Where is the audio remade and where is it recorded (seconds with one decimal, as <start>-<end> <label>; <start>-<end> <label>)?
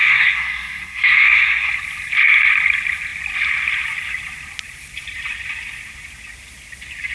0.0-1.7 remade; 1.7-7.1 recorded